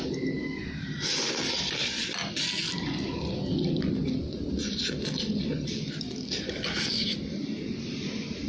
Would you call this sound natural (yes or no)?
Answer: yes